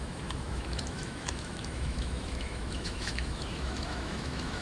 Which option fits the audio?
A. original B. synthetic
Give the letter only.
B